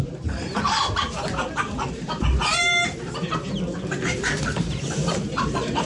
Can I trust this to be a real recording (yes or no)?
no